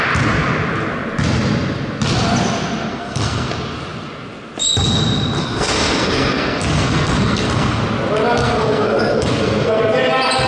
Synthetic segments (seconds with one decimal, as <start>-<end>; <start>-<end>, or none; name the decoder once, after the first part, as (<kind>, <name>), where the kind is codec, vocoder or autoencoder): 2.9-3.5 (codec, SNAC); 5.4-7.8; 8.4-9.8